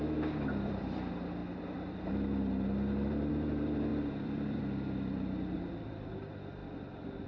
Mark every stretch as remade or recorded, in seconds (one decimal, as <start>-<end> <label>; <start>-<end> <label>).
0.0-7.3 remade